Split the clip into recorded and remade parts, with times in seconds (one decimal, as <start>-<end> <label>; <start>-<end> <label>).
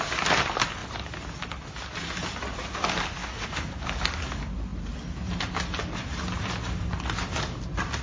0.0-3.2 recorded; 3.2-4.2 remade; 4.2-8.0 recorded